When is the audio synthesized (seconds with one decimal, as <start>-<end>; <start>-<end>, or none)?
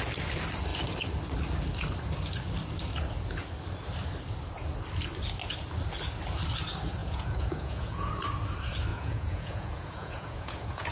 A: 7.0-8.1; 8.9-10.9